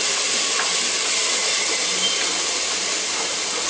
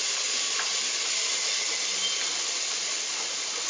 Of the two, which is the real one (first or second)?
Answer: second